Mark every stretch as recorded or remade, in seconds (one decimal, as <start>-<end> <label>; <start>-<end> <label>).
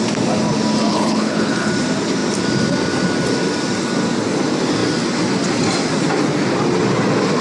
0.0-0.9 recorded; 0.9-1.7 remade; 1.7-7.4 recorded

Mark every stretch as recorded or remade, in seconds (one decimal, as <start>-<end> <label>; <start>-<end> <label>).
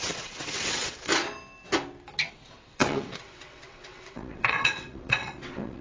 0.0-1.1 remade; 1.1-2.3 recorded; 2.3-5.8 remade